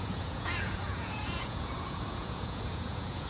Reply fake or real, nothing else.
fake